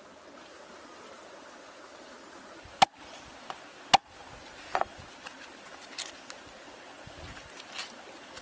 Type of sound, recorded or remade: recorded